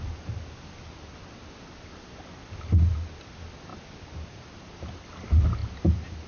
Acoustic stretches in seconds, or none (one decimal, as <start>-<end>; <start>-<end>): 0.0-6.3